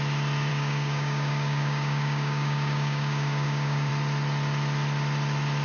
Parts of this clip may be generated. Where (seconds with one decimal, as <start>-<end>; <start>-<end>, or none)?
0.5-3.9